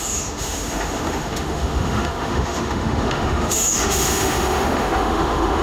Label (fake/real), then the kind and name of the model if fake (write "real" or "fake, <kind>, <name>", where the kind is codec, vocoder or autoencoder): fake, autoencoder, DAC-VAE